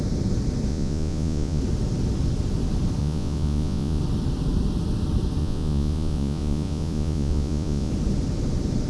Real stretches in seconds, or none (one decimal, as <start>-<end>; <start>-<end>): 0.0-0.7; 1.6-3.0; 4.0-5.4; 7.9-8.9